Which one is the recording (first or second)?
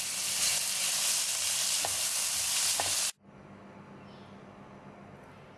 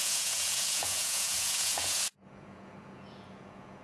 first